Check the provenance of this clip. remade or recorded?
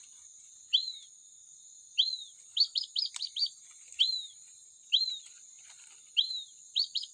recorded